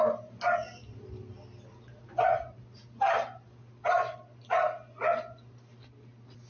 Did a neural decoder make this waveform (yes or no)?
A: no